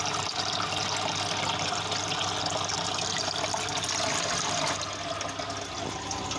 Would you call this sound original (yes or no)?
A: yes